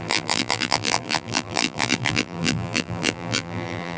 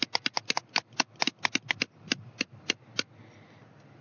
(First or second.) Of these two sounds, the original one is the second